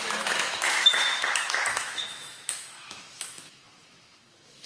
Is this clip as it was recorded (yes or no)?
no